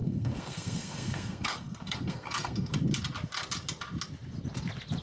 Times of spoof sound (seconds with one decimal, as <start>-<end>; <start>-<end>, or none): 0.0-2.7